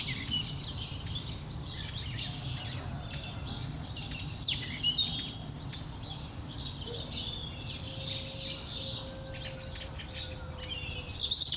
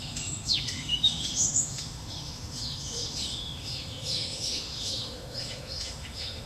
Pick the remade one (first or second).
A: second